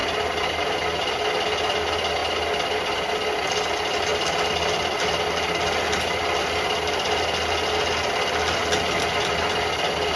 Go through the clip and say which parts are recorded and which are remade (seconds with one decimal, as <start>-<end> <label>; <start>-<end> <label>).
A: 0.0-10.2 recorded